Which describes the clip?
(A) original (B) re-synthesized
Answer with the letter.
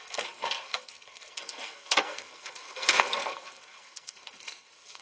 B